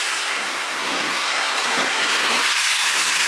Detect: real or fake fake